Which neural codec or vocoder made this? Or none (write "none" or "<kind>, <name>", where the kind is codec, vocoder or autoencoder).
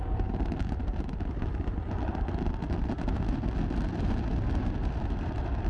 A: none